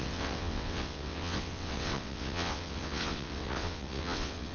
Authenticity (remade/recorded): remade